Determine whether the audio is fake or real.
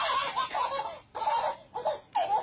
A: real